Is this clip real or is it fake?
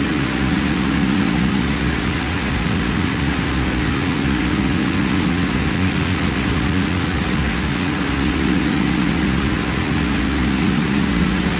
fake